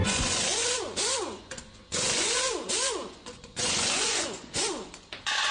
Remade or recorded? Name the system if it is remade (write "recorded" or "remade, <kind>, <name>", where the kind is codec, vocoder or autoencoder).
remade, vocoder, Vocos